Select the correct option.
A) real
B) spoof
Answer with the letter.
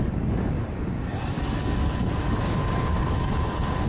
B